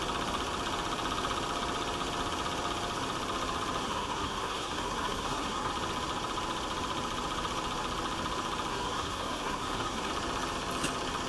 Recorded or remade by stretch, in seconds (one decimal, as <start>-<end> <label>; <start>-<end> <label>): 0.0-3.8 recorded; 3.8-5.7 remade; 5.7-8.7 recorded; 8.7-10.1 remade; 10.1-11.3 recorded